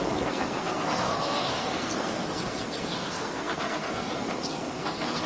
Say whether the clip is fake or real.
fake